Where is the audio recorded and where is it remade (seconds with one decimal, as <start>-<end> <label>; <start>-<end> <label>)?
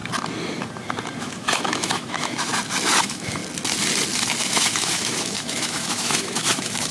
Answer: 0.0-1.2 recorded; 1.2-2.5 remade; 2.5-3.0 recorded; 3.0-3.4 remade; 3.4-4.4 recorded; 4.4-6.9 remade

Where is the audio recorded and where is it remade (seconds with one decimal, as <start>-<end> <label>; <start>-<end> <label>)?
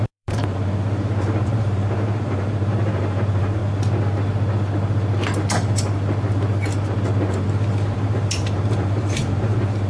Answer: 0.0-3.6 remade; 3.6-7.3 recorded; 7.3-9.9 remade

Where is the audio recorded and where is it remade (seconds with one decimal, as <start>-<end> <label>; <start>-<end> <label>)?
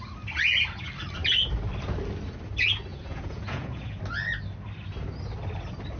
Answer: 0.0-2.9 recorded; 2.9-4.0 remade; 4.0-6.0 recorded